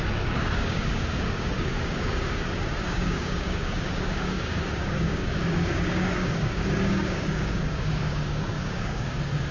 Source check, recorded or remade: remade